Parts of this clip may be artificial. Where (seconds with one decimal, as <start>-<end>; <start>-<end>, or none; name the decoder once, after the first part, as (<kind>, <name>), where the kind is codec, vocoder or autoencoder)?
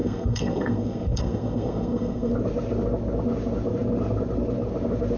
0.0-2.3 (codec, SNAC)